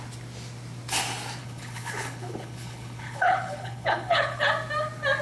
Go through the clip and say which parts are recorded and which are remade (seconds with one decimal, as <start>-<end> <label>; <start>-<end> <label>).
0.0-1.4 recorded; 1.4-4.5 remade; 4.5-5.2 recorded

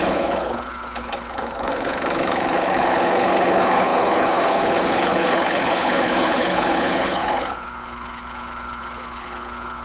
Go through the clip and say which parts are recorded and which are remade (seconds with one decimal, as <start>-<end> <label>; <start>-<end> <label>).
0.0-9.8 remade